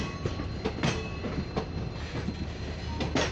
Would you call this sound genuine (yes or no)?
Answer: yes